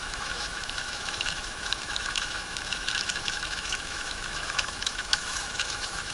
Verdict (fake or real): fake